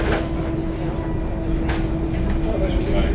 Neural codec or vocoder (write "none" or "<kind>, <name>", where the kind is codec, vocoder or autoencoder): none